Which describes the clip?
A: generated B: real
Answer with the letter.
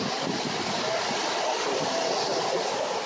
B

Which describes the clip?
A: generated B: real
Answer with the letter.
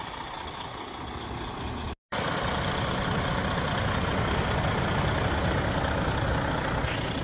B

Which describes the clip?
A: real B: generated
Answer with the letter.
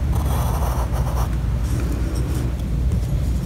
A